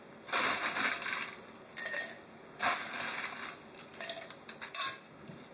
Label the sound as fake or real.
real